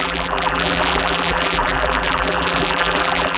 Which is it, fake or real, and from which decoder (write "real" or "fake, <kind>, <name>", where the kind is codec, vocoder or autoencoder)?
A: fake, vocoder, BigVGAN v2